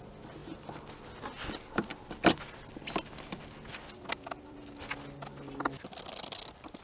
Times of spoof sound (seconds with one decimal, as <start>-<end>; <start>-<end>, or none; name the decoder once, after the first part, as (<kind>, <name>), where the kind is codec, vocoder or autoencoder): none